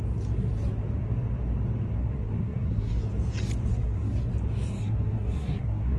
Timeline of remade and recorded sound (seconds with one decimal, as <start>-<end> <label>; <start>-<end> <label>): 0.0-2.0 recorded; 2.0-3.0 remade; 3.0-3.7 recorded; 3.7-4.3 remade; 4.3-4.8 recorded; 4.8-6.0 remade